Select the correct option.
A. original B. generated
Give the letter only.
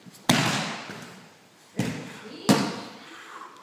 A